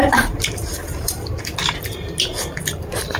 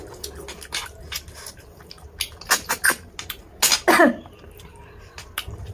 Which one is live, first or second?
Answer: second